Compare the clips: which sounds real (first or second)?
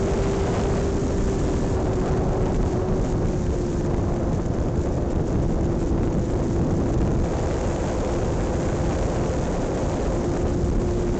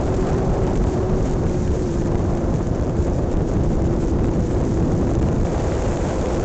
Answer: first